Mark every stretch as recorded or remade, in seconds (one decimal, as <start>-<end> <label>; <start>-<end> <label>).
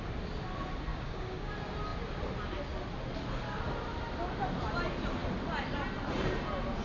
0.0-0.9 recorded; 0.9-1.5 remade; 1.5-6.8 recorded